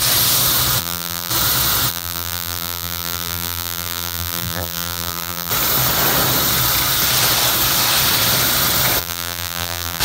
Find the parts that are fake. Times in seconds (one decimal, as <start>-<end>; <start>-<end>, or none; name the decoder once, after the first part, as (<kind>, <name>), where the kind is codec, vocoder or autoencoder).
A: 0.8-1.3 (vocoder, BigVGAN v2); 1.9-5.5; 9.0-10.0